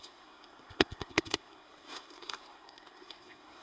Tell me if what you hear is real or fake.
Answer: fake